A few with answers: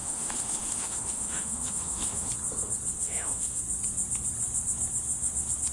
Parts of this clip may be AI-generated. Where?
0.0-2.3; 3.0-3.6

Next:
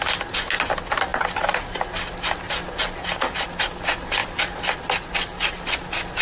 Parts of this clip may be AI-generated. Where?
none

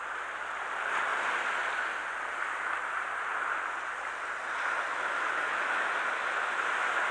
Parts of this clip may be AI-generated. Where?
4.9-5.9

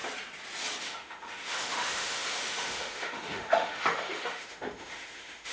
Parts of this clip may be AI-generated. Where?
0.8-5.5

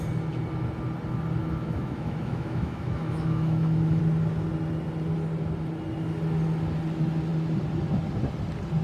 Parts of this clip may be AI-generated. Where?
1.4-4.0